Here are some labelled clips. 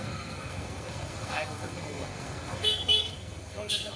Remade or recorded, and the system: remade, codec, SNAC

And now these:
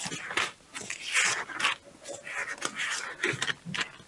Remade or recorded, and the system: recorded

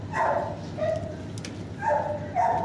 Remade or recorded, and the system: recorded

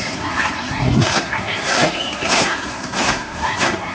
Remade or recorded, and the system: remade, codec, SNAC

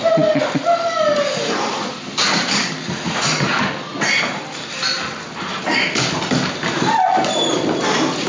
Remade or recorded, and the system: recorded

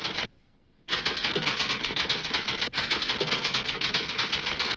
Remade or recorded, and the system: remade, codec, SNAC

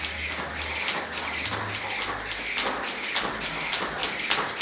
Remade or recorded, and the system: recorded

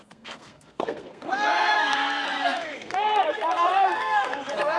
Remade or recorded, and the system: remade, codec, SNAC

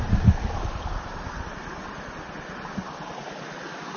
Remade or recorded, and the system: recorded